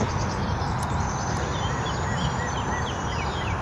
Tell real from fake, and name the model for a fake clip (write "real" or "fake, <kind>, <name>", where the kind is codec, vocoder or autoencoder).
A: real